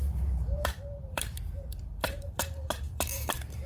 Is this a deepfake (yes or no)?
yes